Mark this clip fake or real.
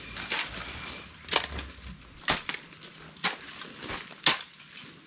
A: real